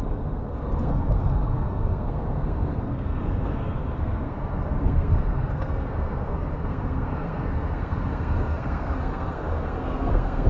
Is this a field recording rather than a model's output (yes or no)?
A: no